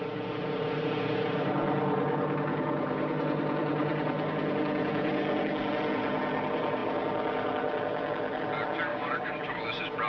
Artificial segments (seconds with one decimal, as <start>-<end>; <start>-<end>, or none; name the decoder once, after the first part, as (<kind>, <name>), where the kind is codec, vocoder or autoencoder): 8.9-9.6 (codec, DAC)